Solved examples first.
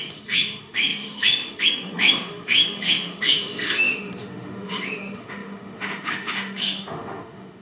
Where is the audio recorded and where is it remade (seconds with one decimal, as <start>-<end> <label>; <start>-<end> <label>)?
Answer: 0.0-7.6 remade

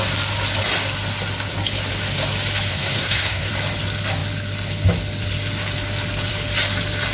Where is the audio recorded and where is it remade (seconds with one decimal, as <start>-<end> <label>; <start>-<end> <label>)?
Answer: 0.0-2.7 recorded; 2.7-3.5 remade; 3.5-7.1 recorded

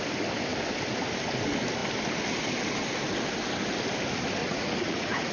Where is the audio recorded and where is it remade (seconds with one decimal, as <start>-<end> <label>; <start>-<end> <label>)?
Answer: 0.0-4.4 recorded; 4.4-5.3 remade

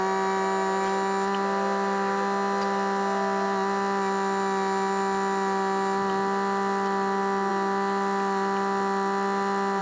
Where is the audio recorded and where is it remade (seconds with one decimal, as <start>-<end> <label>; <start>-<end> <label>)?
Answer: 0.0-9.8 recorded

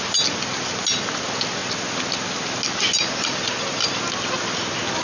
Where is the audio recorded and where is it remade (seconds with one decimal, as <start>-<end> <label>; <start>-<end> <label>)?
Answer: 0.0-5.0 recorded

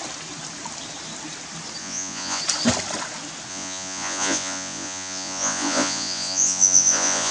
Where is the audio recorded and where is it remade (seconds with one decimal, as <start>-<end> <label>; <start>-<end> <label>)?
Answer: 0.0-1.8 recorded; 1.8-2.4 remade; 2.4-3.5 recorded; 3.5-7.3 remade

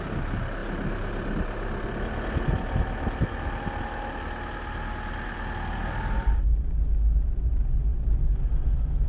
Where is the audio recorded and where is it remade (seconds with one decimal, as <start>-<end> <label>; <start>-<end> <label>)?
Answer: 0.0-9.1 recorded

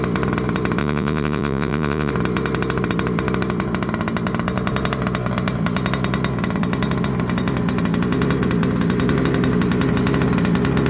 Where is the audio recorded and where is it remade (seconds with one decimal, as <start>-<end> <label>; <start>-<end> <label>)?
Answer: 0.0-0.8 recorded; 0.8-2.1 remade; 2.1-10.9 recorded